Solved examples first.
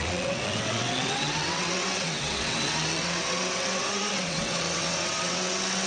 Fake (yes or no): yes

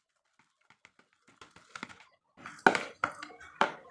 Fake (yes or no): no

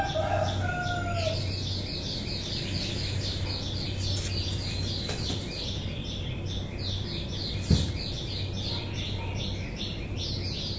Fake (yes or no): no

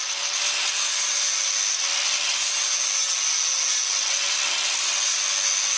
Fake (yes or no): no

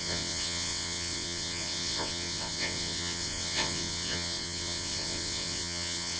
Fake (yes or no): yes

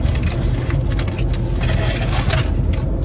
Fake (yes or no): no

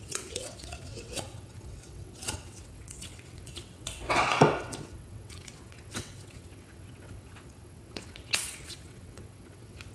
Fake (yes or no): yes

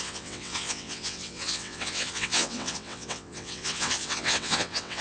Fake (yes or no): yes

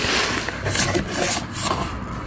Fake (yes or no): no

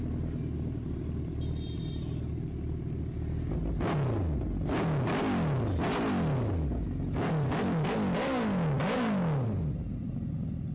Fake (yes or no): no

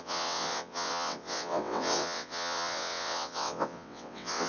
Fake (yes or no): yes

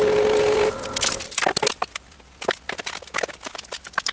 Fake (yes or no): no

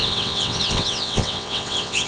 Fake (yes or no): yes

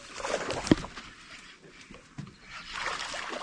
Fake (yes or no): no